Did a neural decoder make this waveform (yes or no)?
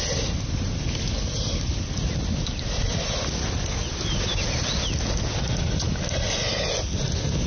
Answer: no